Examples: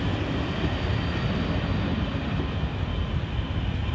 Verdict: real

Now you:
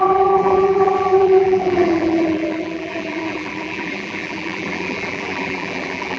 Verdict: fake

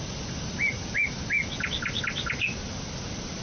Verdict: real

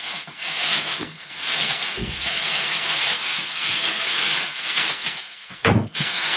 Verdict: fake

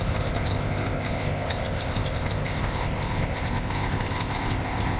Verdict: fake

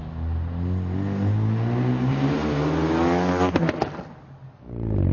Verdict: real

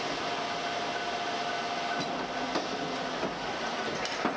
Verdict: real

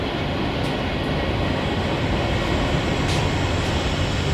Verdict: real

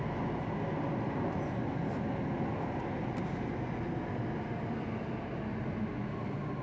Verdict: real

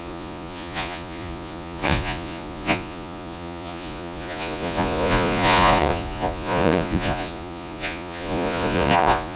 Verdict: fake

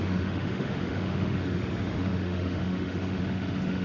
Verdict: fake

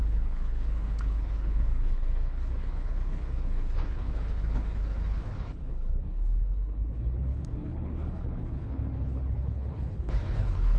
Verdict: fake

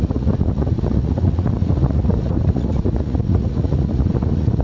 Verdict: fake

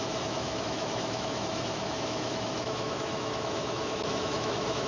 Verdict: fake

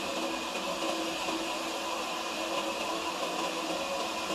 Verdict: real